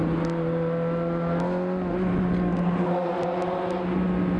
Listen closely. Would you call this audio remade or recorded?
recorded